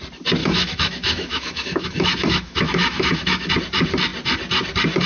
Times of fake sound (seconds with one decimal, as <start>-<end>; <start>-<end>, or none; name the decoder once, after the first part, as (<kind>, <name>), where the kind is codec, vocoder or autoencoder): 0.4-3.5 (autoencoder, DAC-VAE)